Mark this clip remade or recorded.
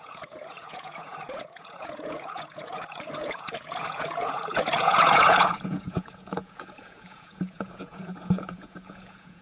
remade